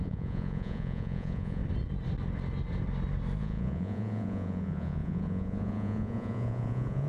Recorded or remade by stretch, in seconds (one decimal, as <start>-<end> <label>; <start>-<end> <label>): 0.0-1.6 remade; 1.6-3.4 recorded; 3.4-7.1 remade